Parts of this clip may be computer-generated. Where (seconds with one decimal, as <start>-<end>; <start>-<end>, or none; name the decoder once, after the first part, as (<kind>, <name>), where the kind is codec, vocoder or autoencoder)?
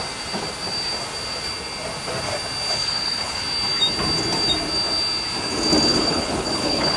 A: 2.8-3.4 (codec, HILCodec); 5.9-7.0